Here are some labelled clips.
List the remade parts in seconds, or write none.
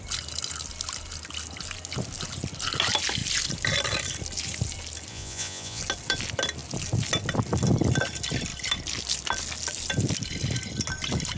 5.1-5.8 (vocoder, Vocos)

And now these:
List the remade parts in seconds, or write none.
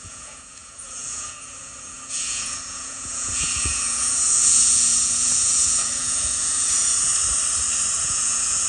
0.0-7.1 (vocoder, Vocos); 8.0-8.7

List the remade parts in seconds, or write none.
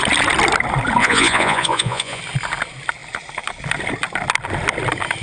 1.0-2.2 (vocoder, Vocos)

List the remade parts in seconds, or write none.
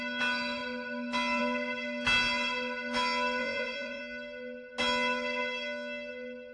3.4-4.0 (vocoder, Vocos)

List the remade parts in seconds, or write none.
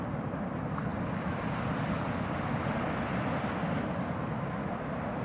none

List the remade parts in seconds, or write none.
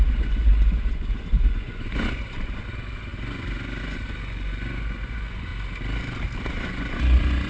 0.0-5.5 (vocoder, Vocos); 6.5-7.5